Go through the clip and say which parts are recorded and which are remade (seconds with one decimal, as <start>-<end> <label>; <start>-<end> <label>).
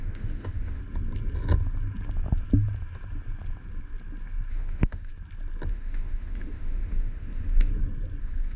0.0-0.8 remade; 0.8-4.5 recorded; 4.5-5.1 remade; 5.1-5.7 recorded; 5.7-7.7 remade; 7.7-8.2 recorded; 8.2-8.6 remade